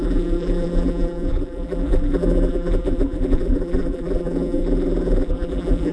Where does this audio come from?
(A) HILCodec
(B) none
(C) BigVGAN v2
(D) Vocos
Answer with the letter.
C